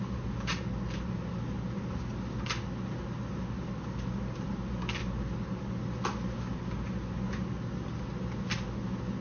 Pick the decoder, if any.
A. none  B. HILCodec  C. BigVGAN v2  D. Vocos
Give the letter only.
A